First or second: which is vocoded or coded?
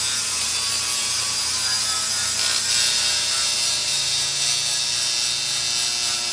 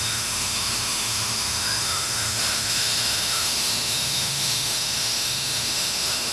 second